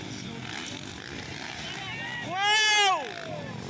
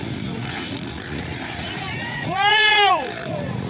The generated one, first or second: second